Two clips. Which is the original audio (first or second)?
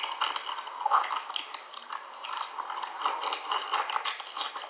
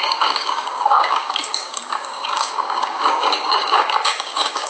first